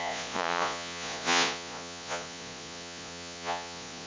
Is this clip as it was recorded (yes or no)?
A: no